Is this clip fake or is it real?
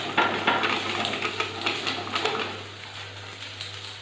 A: real